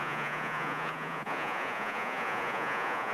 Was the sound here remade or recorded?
remade